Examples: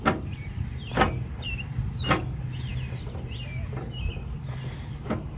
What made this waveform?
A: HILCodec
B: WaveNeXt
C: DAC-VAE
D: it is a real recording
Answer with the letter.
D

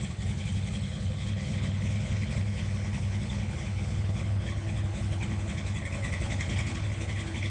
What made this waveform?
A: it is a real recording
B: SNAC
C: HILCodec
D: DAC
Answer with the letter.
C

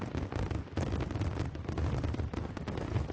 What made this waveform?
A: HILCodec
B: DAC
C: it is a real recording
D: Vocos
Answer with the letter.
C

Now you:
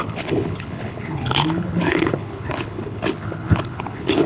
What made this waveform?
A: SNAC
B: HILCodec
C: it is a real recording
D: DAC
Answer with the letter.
B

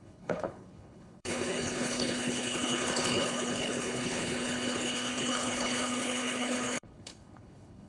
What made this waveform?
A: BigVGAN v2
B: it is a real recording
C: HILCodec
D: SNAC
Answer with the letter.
C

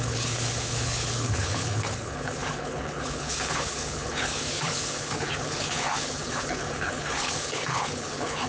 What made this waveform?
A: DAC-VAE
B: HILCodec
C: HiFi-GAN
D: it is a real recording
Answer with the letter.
B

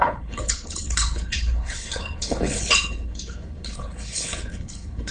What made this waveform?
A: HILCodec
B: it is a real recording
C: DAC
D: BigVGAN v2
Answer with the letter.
A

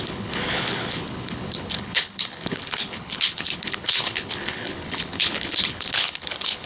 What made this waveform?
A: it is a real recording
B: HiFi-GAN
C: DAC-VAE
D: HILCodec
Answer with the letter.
D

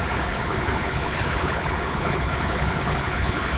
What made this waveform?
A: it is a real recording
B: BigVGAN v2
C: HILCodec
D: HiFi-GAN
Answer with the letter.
C